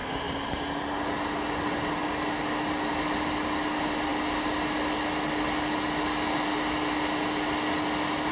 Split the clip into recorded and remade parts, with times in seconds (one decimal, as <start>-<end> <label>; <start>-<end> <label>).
0.0-0.6 remade; 0.6-8.3 recorded

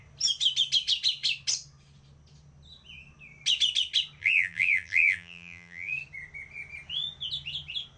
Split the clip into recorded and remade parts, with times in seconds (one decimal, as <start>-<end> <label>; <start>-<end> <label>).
0.0-4.2 recorded; 4.2-5.9 remade; 5.9-8.0 recorded

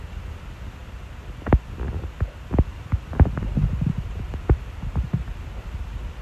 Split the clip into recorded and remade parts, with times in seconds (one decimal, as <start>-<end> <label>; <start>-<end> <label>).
0.0-0.8 remade; 0.8-2.6 recorded; 2.6-6.2 remade